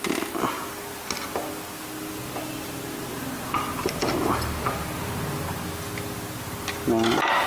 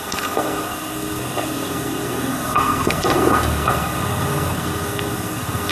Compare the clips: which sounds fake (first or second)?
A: second